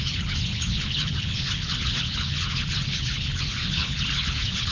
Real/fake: fake